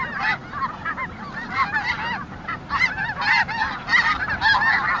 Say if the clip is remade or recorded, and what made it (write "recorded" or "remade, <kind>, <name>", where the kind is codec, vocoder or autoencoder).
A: recorded